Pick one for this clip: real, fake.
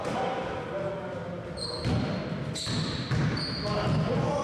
real